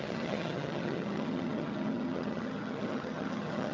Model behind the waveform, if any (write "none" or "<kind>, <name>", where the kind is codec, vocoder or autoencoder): vocoder, HiFi-GAN